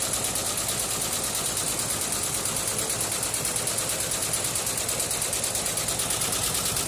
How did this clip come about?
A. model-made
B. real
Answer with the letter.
B